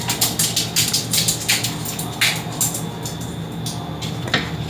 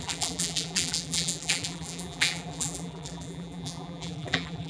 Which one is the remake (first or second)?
second